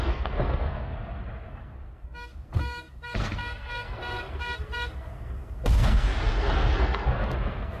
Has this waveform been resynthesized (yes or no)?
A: yes